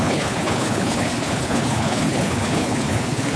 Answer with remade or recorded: remade